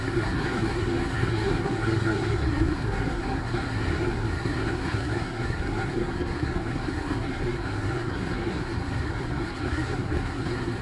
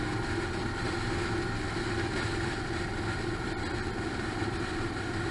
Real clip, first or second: second